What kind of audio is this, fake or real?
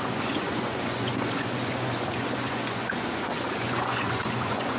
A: fake